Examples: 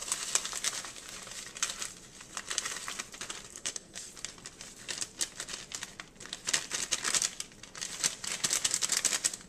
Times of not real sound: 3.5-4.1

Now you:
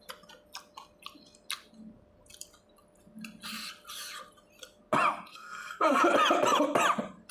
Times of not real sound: 5.3-6.0

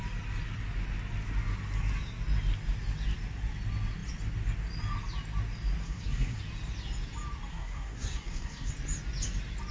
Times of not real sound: 5.8-6.4; 7.5-8.7

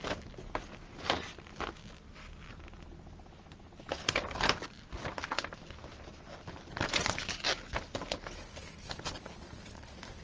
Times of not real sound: none

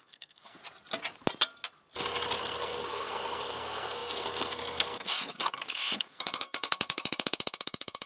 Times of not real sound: 0.0-0.6; 2.4-8.1

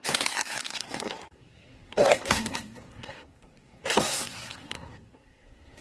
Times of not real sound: 0.0-5.8

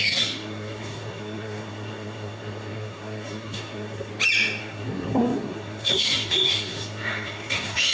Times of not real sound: 0.0-4.1; 4.6-7.9